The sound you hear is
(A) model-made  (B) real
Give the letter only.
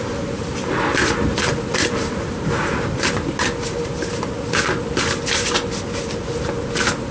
B